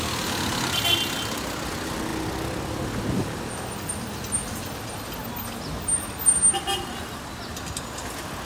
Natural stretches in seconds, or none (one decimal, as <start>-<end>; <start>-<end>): 0.0-8.4